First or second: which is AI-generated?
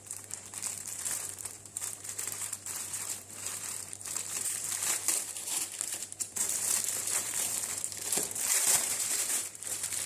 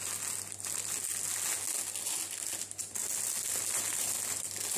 first